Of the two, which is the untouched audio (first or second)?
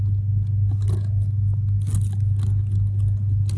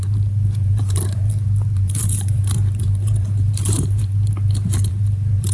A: first